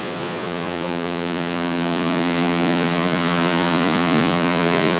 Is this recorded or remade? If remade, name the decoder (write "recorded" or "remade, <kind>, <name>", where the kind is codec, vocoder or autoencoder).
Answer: remade, vocoder, Vocos